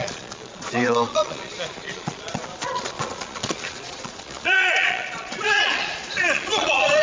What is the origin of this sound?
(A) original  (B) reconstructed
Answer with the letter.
B